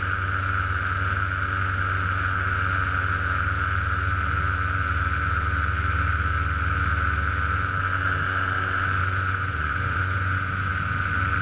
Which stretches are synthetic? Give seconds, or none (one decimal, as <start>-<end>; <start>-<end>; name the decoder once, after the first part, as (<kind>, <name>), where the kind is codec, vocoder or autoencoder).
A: 9.0-10.7 (vocoder, Vocos)